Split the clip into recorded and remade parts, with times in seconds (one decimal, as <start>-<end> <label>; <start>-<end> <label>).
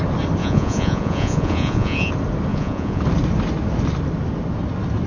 0.0-0.4 recorded; 0.4-2.1 remade; 2.1-2.5 recorded; 2.5-3.0 remade; 3.0-5.1 recorded